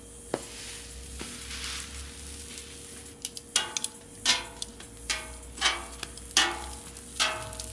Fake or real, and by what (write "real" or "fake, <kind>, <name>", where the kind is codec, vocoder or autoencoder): real